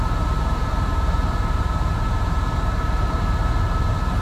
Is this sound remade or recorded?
remade